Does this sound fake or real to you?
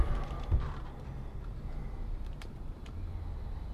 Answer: fake